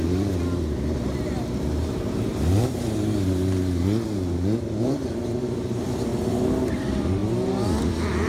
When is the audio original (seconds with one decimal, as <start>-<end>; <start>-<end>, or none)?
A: 6.1-6.7; 7.2-8.3

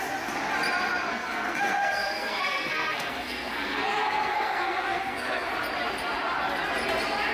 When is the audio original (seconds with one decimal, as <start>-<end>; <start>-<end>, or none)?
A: 0.0-1.1; 5.5-7.3

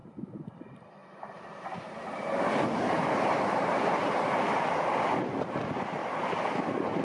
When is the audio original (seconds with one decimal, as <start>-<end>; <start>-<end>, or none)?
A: 0.0-1.0; 5.2-7.0